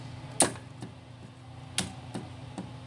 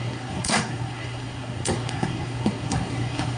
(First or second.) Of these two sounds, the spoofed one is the second